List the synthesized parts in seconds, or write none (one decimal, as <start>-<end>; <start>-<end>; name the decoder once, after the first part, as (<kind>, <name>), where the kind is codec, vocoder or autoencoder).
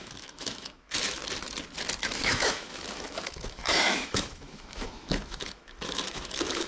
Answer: 0.0-1.2 (autoencoder, DAC-VAE); 2.0-6.7